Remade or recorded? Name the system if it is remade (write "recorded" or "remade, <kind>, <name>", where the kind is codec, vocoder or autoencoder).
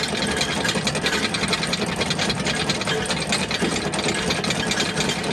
recorded